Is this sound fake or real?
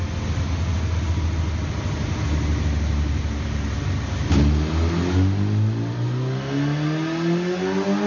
real